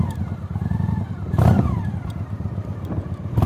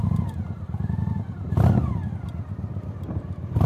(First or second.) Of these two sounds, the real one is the second